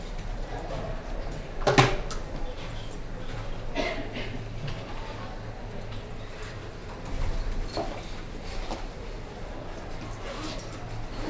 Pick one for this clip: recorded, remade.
recorded